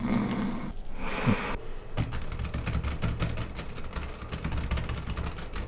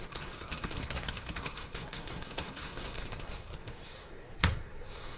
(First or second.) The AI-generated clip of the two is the second